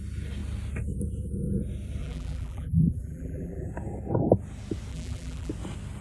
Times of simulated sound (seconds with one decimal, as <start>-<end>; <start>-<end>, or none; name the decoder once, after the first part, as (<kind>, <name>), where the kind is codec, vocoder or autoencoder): 2.0-3.7 (vocoder, BigVGAN v2); 4.9-5.5